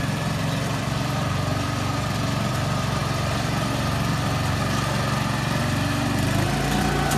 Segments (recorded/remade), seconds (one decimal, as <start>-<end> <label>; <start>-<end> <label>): 0.0-3.0 remade; 3.0-6.8 recorded; 6.8-7.2 remade